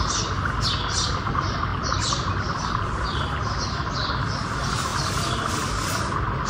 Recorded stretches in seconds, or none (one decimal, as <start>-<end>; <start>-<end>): 0.0-1.7; 2.8-6.5